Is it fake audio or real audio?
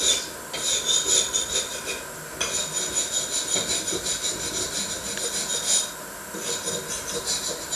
real